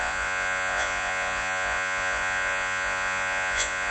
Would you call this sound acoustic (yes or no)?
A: no